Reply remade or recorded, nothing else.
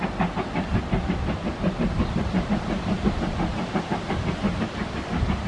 recorded